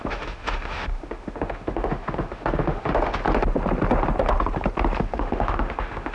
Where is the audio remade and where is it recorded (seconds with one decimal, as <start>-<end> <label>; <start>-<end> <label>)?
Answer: 0.0-3.2 remade; 3.2-5.0 recorded; 5.0-6.1 remade